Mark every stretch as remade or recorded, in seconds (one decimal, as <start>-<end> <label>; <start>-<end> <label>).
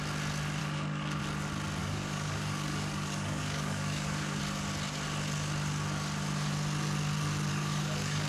0.0-0.6 recorded; 0.6-1.2 remade; 1.2-1.8 recorded; 1.8-4.4 remade; 4.4-7.5 recorded; 7.5-8.3 remade